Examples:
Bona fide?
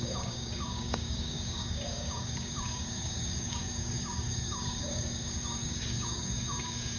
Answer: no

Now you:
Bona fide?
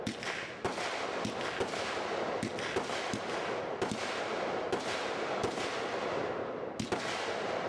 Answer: yes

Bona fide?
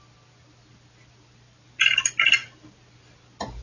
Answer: yes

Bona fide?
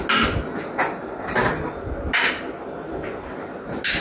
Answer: yes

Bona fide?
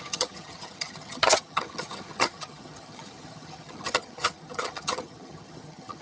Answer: no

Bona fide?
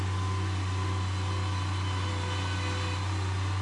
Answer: yes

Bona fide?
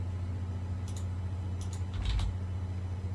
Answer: yes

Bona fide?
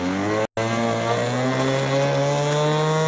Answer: yes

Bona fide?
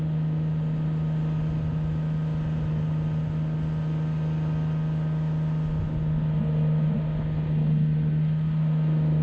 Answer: yes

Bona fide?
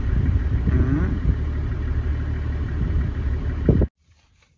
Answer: yes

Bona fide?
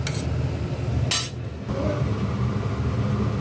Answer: yes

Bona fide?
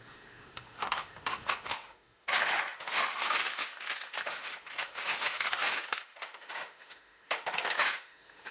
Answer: no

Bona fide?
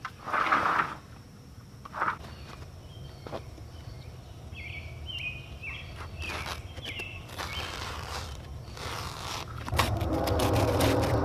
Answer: no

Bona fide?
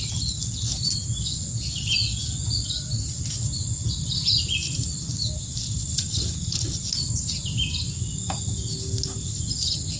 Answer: yes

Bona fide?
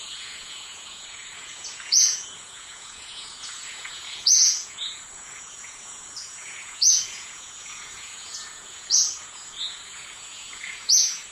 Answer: no